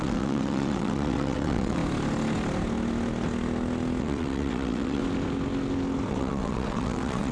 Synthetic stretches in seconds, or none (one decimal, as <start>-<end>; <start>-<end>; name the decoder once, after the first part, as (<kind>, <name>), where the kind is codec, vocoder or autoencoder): 0.0-1.8 (vocoder, WaveNeXt); 4.0-5.0; 6.1-7.3